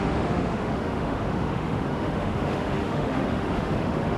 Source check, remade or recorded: remade